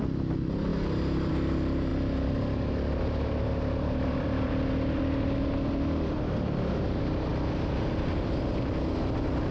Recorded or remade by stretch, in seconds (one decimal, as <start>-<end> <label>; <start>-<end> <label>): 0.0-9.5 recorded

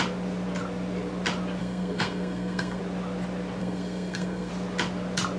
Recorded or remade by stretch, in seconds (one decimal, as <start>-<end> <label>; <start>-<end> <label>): 0.0-1.6 recorded; 1.6-2.8 remade; 2.8-3.6 recorded; 3.6-4.5 remade; 4.5-5.4 recorded

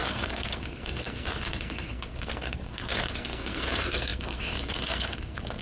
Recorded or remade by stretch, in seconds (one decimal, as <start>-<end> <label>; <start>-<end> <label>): 0.0-5.6 remade